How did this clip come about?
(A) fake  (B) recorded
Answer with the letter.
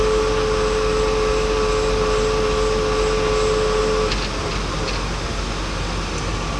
B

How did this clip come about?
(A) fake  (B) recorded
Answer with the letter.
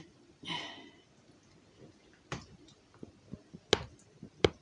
B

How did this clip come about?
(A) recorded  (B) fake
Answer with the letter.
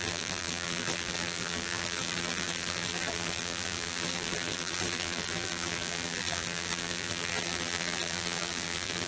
B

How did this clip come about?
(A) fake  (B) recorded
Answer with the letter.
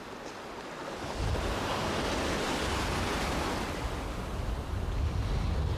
B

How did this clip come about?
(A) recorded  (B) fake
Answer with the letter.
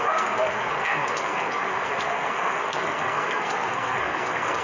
B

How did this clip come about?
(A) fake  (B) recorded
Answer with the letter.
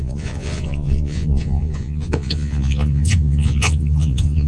A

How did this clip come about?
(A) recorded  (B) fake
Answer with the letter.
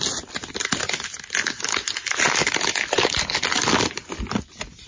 A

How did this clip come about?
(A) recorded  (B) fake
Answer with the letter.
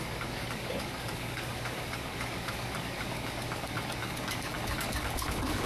B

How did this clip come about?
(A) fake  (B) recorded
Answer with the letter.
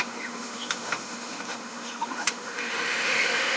A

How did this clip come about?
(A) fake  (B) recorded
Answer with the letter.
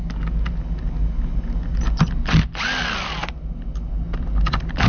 B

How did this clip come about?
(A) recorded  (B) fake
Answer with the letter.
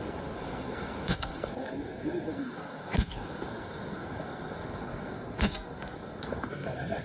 B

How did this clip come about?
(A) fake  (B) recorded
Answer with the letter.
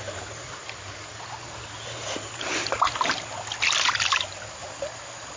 B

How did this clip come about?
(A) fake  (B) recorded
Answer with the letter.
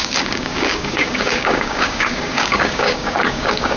A